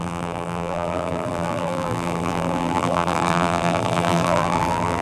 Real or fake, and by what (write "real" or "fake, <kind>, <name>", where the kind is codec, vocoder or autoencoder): fake, vocoder, BigVGAN v2